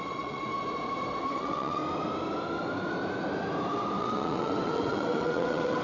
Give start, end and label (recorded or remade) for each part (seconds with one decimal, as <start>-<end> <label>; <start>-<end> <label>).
0.0-0.5 remade; 0.5-1.2 recorded; 1.2-1.8 remade; 1.8-4.0 recorded; 4.0-5.8 remade